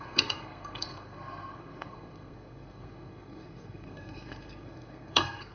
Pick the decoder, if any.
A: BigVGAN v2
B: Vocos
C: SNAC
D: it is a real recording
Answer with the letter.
C